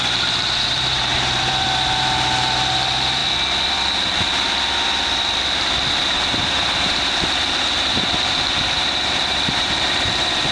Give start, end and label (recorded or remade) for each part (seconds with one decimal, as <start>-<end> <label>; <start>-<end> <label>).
0.0-3.2 remade; 3.2-5.9 recorded; 5.9-10.5 remade